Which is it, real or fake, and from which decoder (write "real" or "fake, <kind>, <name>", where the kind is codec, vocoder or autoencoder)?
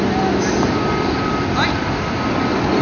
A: real